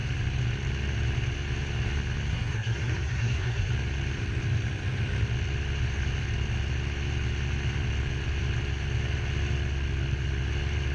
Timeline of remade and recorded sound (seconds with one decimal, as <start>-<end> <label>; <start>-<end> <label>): 0.0-2.3 recorded; 2.3-3.7 remade; 3.7-10.9 recorded